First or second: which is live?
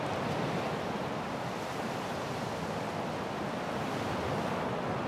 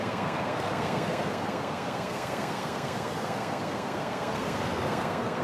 first